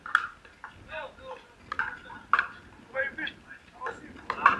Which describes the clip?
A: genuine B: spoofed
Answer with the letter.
A